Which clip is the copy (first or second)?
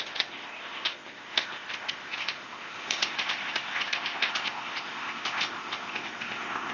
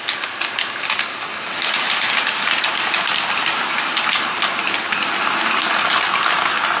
first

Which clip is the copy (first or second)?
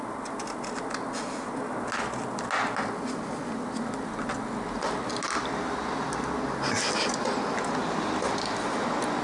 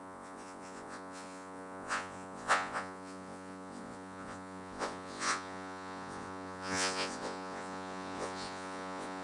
second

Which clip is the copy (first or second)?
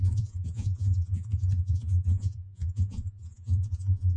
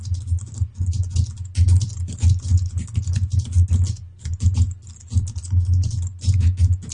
first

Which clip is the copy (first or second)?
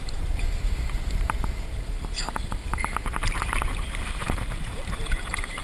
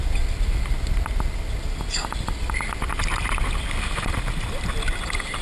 first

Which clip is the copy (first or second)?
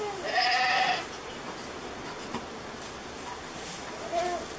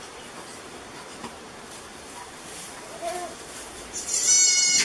second